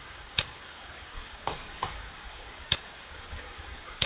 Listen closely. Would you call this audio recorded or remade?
remade